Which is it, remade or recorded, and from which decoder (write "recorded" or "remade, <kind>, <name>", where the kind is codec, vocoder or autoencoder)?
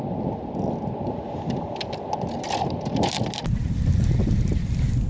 recorded